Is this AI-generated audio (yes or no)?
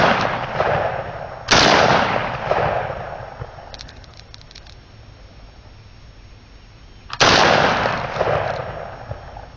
no